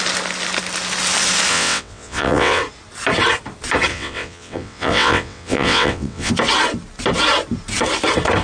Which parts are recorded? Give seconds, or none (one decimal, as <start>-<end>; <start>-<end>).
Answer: 0.0-1.5; 2.6-3.9; 6.3-8.4